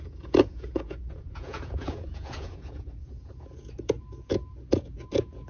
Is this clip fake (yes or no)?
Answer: yes